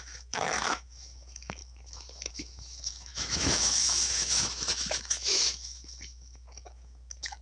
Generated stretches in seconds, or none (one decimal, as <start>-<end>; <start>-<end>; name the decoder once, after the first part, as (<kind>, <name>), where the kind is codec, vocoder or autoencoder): 0.0-7.4 (autoencoder, DAC-VAE)